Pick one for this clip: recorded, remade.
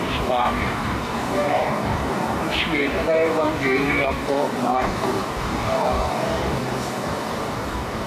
remade